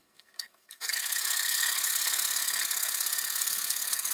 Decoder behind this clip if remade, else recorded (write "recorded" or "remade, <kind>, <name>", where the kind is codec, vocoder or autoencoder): remade, codec, SNAC